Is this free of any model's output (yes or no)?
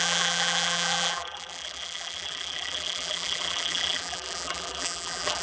no